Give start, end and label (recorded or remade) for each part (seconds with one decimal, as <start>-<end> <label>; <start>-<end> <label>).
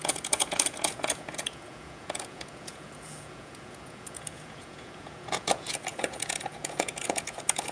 0.0-7.7 remade